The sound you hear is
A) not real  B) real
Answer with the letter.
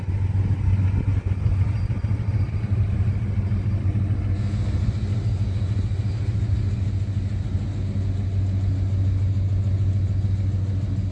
B